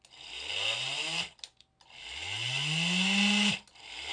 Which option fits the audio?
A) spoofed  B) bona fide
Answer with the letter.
B